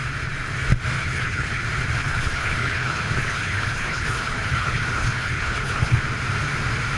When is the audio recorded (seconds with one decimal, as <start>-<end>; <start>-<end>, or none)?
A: 0.0-1.0; 1.6-2.0; 6.0-7.0